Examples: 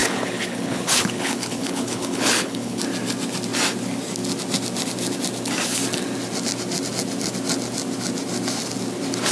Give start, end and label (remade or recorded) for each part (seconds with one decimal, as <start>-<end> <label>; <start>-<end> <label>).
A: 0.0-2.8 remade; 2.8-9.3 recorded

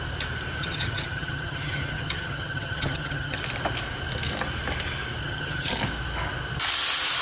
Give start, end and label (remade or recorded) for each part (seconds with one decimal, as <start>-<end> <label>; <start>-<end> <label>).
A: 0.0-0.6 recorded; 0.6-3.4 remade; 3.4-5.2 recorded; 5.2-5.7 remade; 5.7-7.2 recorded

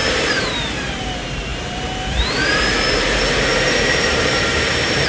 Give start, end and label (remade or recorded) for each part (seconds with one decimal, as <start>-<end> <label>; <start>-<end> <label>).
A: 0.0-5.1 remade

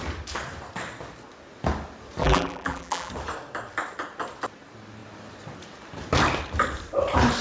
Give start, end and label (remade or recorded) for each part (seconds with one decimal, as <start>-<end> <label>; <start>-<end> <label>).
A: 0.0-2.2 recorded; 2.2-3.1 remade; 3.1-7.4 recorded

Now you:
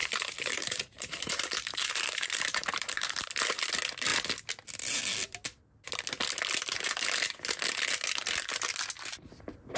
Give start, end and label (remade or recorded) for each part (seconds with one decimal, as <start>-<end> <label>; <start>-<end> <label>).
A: 0.0-3.3 remade; 3.3-9.8 recorded

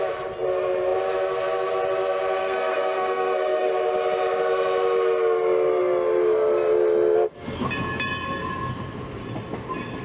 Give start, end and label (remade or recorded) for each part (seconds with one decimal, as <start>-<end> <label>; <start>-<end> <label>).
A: 0.0-2.4 recorded; 2.4-3.7 remade; 3.7-10.0 recorded

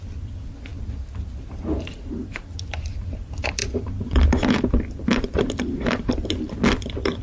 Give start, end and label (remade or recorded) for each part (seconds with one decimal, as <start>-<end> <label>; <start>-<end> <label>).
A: 0.0-7.2 recorded

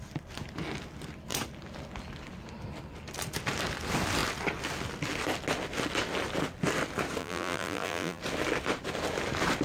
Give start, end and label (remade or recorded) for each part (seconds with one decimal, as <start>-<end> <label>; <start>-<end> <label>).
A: 0.0-7.2 recorded; 7.2-8.2 remade; 8.2-9.6 recorded